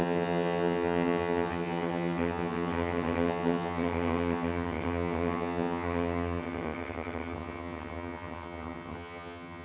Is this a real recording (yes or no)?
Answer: no